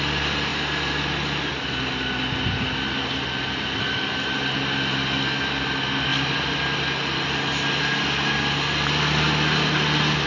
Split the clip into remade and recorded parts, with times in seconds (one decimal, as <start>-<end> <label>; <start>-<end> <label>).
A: 0.0-10.3 recorded